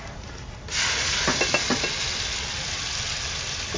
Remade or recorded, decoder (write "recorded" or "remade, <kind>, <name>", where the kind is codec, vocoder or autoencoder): recorded